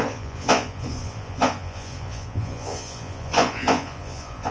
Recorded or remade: remade